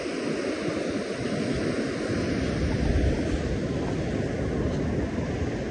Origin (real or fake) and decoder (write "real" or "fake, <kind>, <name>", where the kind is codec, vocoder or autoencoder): real